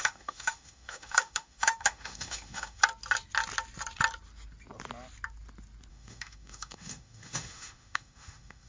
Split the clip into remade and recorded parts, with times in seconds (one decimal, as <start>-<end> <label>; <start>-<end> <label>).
0.0-2.8 remade; 2.8-5.9 recorded; 5.9-8.7 remade